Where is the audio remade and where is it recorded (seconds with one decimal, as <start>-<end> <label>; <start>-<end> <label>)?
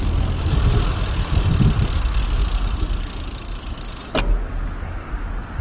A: 0.0-5.6 recorded